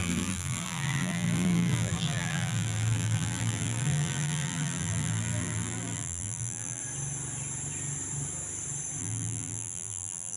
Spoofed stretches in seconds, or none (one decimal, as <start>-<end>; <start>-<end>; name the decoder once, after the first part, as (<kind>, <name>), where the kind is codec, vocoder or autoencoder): 0.0-6.8 (vocoder, BigVGAN v2); 9.0-10.4